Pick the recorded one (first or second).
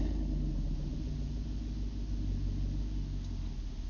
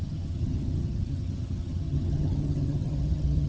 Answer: first